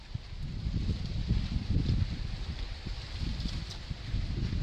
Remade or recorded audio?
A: recorded